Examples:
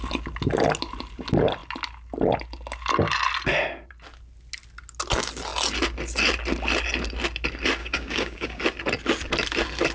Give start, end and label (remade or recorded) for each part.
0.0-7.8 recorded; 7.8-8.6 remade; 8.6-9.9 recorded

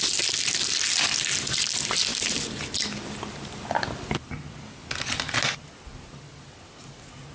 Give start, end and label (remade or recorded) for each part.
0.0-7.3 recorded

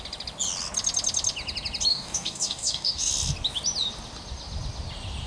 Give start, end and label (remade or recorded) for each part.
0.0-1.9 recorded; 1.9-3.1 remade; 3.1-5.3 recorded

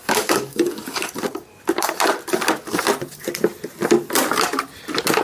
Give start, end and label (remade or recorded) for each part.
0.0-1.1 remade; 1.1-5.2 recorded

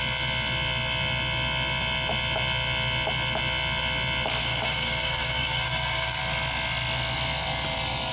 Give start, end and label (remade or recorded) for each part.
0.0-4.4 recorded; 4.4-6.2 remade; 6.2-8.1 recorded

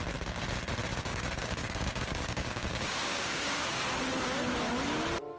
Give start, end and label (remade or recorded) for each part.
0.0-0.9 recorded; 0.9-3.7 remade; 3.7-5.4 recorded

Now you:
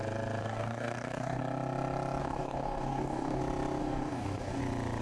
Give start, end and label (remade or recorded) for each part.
0.0-0.4 recorded; 0.4-1.4 remade; 1.4-2.2 recorded; 2.2-3.4 remade; 3.4-3.8 recorded; 3.8-4.6 remade; 4.6-5.0 recorded

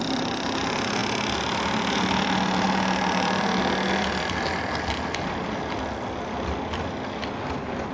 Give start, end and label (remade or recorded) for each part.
0.0-7.9 recorded